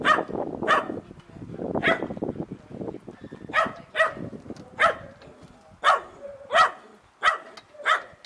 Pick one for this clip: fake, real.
real